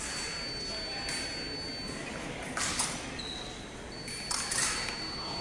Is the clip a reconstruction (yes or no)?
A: no